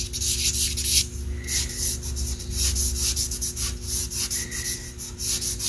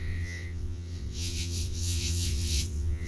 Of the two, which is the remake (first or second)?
second